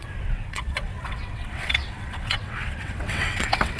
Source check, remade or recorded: remade